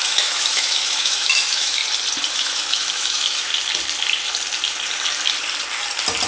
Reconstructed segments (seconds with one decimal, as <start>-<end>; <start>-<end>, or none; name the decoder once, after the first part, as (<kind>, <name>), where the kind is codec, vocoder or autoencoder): 0.0-1.8 (autoencoder, DAC-VAE); 2.3-3.5